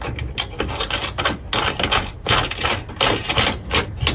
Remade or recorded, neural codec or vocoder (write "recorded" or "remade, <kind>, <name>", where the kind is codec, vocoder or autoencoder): recorded